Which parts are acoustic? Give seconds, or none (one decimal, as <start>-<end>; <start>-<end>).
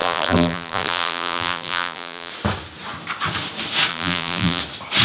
2.3-3.9; 4.6-5.0